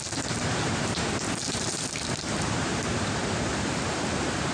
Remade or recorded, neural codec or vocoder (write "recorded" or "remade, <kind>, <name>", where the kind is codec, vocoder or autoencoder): remade, vocoder, BigVGAN v2